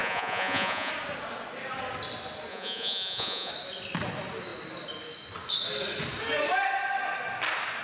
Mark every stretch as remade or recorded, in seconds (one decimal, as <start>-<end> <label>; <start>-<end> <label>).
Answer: 0.0-0.9 remade; 0.9-2.5 recorded; 2.5-3.5 remade; 3.5-7.8 recorded